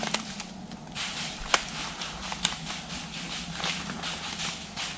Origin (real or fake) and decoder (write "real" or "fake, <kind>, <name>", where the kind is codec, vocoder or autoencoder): real